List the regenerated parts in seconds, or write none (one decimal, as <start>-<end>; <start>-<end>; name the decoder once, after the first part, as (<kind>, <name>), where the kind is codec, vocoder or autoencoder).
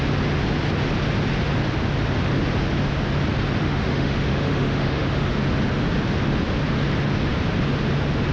3.6-5.3 (autoencoder, DAC-VAE)